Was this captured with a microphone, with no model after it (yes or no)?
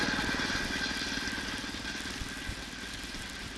yes